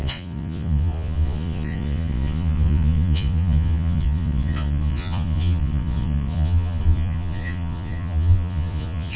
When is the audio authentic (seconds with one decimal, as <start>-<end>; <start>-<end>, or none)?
none